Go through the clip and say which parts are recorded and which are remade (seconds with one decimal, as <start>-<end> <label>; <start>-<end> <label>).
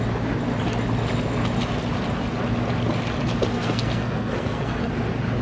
0.0-3.5 recorded; 3.5-4.9 remade; 4.9-5.4 recorded